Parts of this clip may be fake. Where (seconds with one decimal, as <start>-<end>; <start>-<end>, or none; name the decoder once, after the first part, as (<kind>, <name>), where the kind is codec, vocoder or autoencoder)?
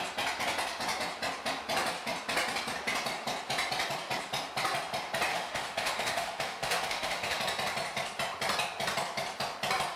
5.3-7.4 (autoencoder, DAC-VAE)